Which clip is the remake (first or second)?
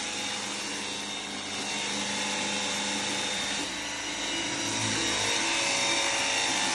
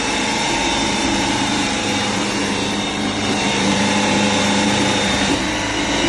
second